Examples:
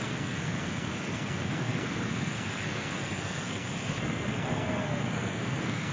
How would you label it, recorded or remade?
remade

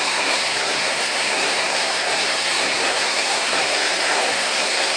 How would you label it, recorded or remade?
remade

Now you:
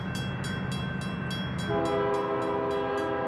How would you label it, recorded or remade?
recorded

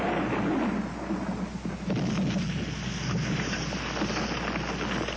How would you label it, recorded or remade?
recorded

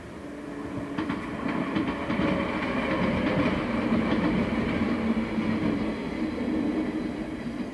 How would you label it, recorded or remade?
recorded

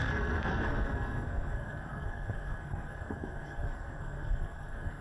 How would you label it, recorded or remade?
remade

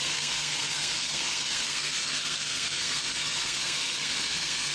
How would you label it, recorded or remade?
remade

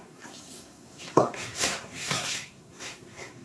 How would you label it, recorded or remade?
remade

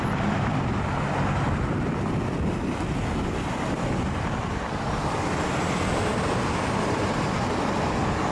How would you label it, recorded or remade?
recorded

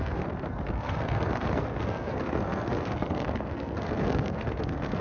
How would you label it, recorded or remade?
remade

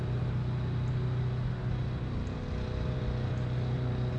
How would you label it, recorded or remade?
recorded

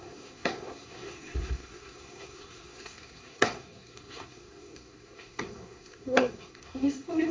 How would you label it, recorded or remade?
remade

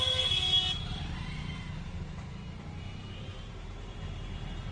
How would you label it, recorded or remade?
recorded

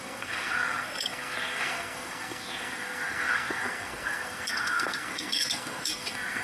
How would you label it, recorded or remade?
remade